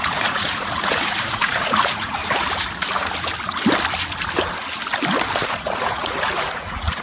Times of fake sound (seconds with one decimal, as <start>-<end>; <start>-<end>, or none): 0.0-2.2; 5.5-7.0